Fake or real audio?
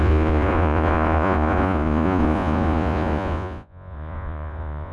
fake